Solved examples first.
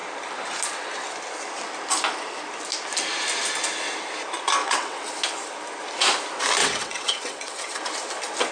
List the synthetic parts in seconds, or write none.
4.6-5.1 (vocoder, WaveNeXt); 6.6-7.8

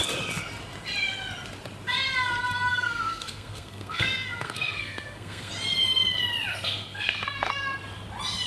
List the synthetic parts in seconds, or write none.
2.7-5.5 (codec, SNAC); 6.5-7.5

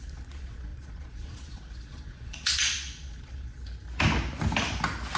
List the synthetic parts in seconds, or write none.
0.0-3.6 (vocoder, Vocos)

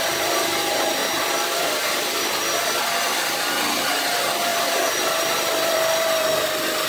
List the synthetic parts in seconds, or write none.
1.0-2.0 (vocoder, BigVGAN v2); 4.5-6.2